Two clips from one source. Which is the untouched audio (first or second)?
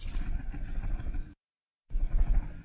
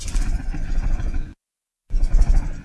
first